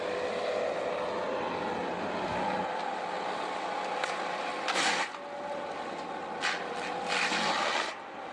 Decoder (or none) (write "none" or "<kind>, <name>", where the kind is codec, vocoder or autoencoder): none